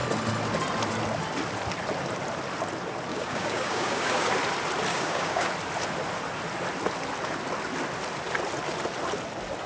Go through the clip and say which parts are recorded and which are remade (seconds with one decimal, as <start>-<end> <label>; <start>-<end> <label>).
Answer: 0.0-3.1 recorded; 3.1-4.3 remade; 4.3-4.9 recorded; 4.9-5.5 remade; 5.5-9.7 recorded